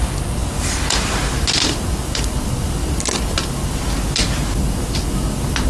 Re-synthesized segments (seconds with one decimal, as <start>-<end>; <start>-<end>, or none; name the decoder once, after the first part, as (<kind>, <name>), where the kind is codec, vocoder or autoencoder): none